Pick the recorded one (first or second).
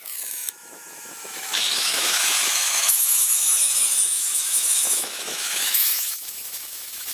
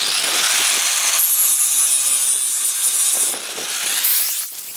second